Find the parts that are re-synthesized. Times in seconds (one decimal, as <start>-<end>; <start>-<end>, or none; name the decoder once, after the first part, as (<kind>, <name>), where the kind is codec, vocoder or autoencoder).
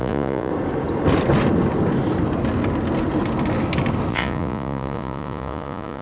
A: 0.0-0.5 (vocoder, Vocos); 4.1-6.0